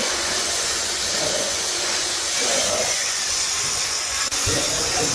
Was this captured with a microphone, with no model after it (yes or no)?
no